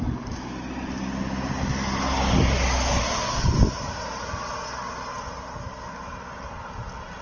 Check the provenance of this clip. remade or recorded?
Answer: recorded